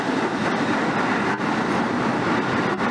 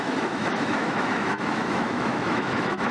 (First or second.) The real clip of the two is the first